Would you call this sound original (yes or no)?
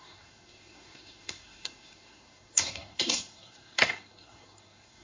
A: no